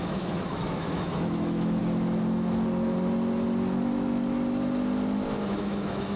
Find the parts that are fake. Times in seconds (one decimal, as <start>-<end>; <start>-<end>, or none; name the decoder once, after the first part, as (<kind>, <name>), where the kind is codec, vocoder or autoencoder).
0.0-1.8 (autoencoder, DAC-VAE); 5.5-6.2